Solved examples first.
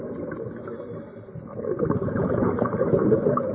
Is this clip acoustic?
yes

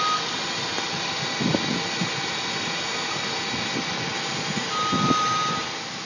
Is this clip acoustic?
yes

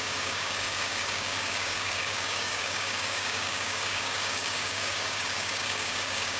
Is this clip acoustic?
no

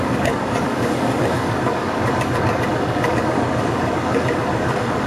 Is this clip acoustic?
no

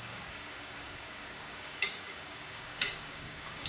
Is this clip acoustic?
no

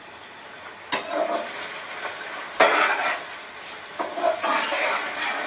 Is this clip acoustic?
yes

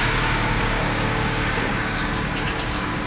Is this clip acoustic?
no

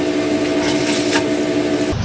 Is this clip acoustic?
yes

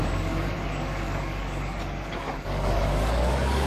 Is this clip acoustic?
no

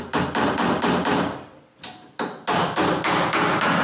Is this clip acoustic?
yes